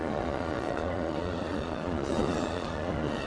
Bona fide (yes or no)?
no